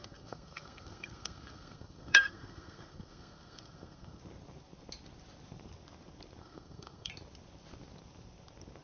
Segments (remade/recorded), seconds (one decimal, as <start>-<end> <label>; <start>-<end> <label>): 0.0-4.2 remade; 4.2-6.4 recorded; 6.4-7.1 remade; 7.1-8.8 recorded